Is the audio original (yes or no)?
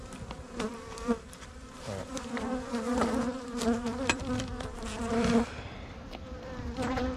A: no